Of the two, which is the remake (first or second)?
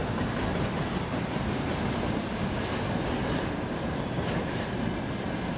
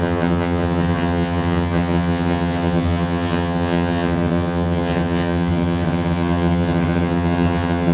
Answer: second